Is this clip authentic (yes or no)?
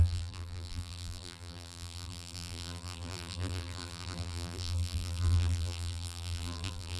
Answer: no